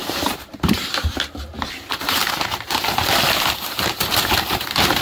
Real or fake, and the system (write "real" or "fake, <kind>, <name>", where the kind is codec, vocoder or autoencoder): fake, vocoder, BigVGAN v2